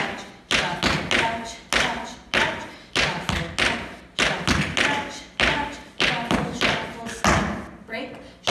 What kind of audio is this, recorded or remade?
recorded